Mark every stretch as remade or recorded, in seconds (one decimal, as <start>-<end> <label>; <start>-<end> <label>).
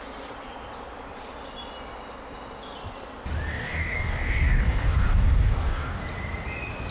0.0-3.5 recorded; 3.5-6.0 remade; 6.0-6.9 recorded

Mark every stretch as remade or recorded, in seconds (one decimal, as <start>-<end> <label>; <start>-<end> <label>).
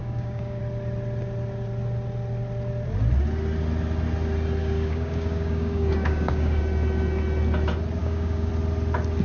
0.0-0.6 remade; 0.6-4.6 recorded; 4.6-6.6 remade; 6.6-8.0 recorded; 8.0-8.5 remade; 8.5-9.2 recorded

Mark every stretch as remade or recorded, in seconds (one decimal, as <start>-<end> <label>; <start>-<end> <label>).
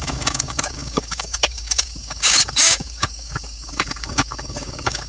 0.0-5.1 remade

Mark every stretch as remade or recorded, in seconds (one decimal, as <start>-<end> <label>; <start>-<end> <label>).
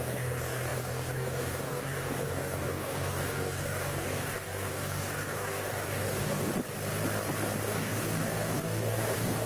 0.0-6.5 remade; 6.5-7.6 recorded; 7.6-9.5 remade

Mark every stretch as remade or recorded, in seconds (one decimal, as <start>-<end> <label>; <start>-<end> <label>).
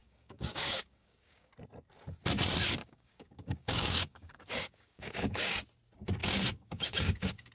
0.0-1.5 remade; 1.5-2.8 recorded; 2.8-5.5 remade; 5.5-6.2 recorded; 6.2-7.5 remade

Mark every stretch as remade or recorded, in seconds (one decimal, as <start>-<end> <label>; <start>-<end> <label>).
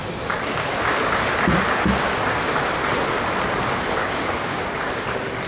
0.0-4.0 recorded; 4.0-4.6 remade; 4.6-5.5 recorded